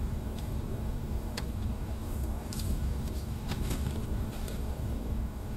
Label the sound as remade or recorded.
remade